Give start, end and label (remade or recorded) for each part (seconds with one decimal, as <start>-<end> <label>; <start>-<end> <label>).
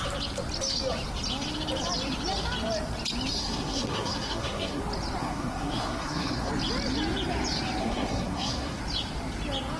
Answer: 0.0-3.3 recorded; 3.3-4.8 remade; 4.8-5.2 recorded; 5.2-6.5 remade; 6.5-7.8 recorded; 7.8-8.8 remade; 8.8-9.8 recorded